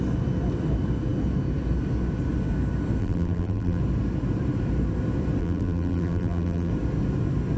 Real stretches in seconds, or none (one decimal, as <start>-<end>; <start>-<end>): 0.0-3.0; 3.8-5.4; 6.7-7.6